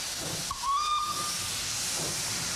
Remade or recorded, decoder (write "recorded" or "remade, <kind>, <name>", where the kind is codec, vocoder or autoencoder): remade, vocoder, BigVGAN v2